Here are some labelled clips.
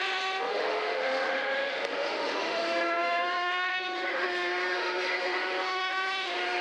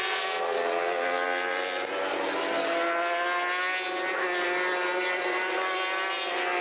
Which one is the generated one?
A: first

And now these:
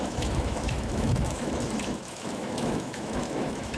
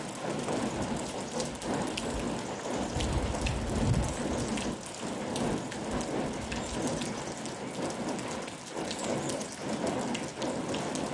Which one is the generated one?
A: first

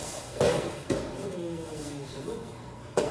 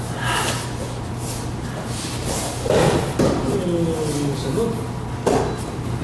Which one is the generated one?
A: first